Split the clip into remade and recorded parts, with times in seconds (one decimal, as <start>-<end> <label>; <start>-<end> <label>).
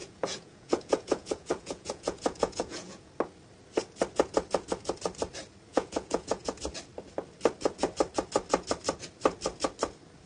0.0-3.1 remade; 3.1-5.7 recorded; 5.7-6.6 remade; 6.6-10.3 recorded